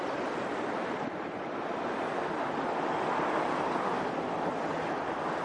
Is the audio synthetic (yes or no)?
no